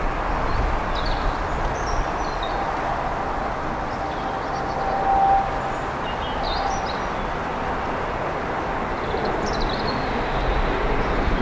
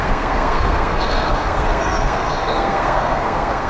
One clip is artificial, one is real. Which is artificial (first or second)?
second